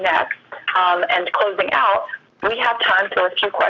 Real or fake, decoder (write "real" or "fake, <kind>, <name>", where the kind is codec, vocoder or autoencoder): real